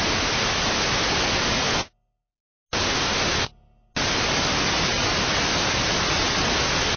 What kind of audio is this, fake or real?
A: real